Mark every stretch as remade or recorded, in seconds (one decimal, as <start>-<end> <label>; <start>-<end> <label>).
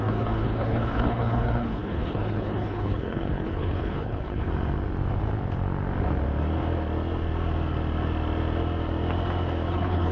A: 0.0-4.5 remade; 4.5-9.7 recorded; 9.7-10.1 remade